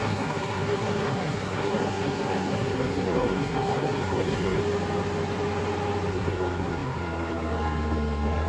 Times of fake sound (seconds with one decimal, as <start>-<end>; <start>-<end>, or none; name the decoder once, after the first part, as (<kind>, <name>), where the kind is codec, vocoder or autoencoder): 0.0-4.6 (codec, SNAC); 6.1-8.5